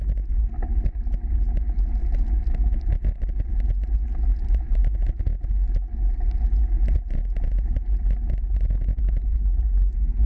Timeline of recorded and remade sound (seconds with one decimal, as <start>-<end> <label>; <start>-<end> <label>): 0.0-10.3 recorded